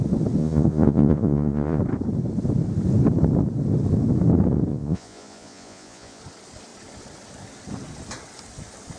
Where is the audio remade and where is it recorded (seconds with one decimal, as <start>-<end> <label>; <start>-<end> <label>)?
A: 0.0-0.4 recorded; 0.4-1.8 remade; 1.8-4.7 recorded; 4.7-6.2 remade; 6.2-9.0 recorded